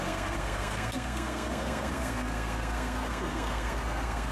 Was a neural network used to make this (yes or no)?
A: yes